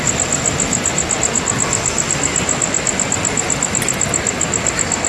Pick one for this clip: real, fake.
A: real